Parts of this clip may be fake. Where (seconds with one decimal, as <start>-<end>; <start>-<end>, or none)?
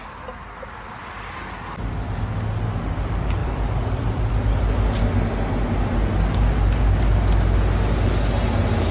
3.4-4.3